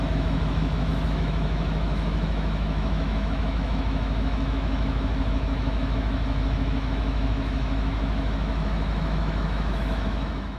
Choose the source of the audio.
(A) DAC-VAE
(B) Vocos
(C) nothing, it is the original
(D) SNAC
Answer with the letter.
A